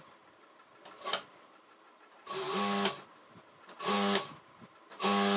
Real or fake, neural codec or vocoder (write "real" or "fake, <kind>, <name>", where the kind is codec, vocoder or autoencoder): real